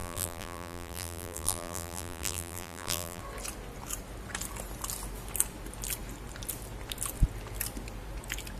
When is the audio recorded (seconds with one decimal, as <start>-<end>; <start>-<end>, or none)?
3.2-8.6